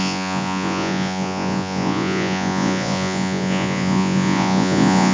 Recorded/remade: remade